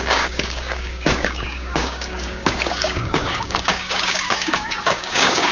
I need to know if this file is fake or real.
fake